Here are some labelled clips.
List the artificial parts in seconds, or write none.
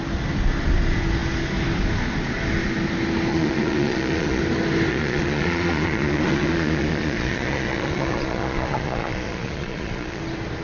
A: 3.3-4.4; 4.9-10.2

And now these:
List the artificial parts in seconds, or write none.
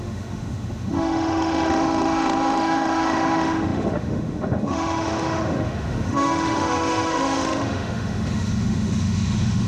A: 0.0-9.7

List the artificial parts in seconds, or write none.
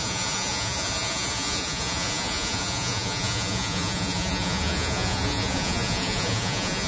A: 0.0-6.9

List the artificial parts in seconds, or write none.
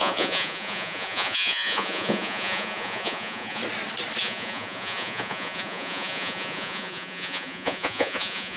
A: 0.0-3.6; 4.2-8.6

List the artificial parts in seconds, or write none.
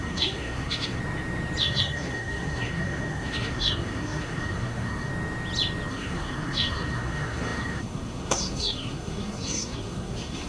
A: 0.0-1.0; 1.6-5.1; 5.9-10.5